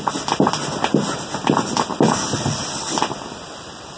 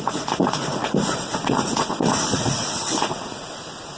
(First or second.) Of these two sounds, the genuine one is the first